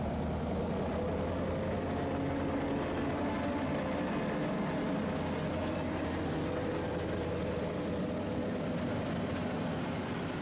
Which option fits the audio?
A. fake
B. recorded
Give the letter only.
B